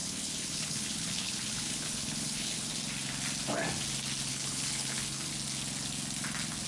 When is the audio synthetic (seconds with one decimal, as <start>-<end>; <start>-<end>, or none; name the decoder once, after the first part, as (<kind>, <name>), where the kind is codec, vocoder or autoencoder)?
0.0-2.7 (codec, HILCodec); 4.3-5.3